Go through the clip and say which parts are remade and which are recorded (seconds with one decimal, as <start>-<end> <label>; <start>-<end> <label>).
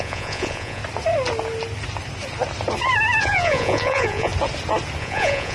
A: 0.0-0.8 remade; 0.8-3.2 recorded; 3.2-4.3 remade; 4.3-5.0 recorded; 5.0-5.5 remade